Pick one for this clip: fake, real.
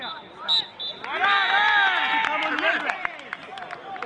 real